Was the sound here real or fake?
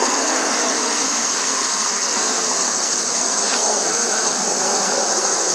fake